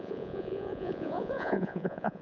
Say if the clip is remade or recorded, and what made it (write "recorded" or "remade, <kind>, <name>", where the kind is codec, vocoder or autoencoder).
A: remade, vocoder, Vocos